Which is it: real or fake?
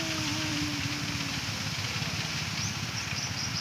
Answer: real